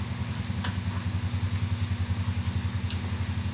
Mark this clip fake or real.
real